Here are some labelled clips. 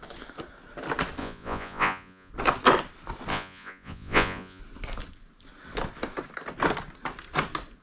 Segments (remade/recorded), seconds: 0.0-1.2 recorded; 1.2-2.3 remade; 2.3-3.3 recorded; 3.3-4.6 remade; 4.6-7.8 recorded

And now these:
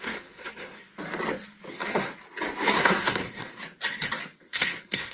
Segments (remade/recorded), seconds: 0.0-0.9 remade; 0.9-1.7 recorded; 1.7-2.1 remade; 2.1-2.7 recorded; 2.7-3.6 remade; 3.6-4.4 recorded; 4.4-5.1 remade

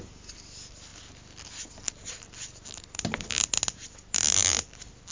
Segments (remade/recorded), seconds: 0.0-5.1 recorded